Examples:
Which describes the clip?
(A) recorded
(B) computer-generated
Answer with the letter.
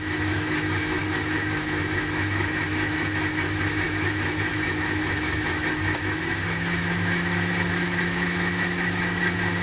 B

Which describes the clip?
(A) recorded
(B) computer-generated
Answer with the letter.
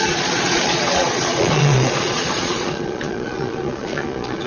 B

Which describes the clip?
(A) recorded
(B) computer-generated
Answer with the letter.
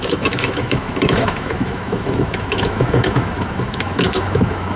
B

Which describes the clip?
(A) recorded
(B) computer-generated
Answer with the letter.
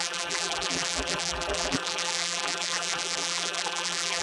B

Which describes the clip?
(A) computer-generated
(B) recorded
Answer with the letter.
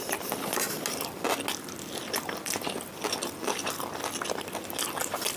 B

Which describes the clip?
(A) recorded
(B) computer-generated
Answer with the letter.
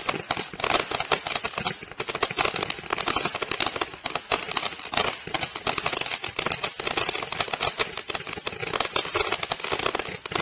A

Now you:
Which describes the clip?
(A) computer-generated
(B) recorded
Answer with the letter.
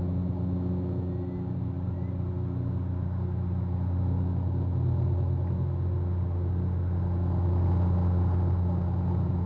B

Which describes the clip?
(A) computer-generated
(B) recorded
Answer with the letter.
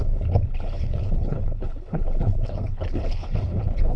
A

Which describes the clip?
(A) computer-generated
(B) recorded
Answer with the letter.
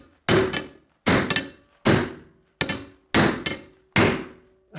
B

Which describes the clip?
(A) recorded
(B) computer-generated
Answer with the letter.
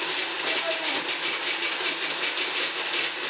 A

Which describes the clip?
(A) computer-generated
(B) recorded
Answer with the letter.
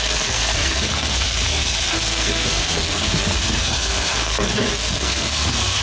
A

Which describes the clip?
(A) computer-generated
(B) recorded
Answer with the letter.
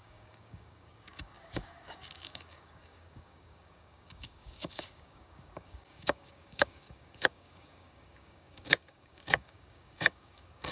A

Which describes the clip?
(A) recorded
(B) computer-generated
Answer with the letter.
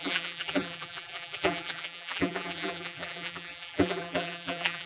B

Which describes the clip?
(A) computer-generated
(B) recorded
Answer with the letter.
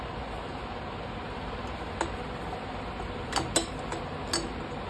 B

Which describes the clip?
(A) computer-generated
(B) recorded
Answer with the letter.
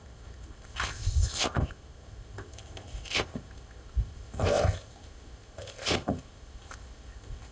A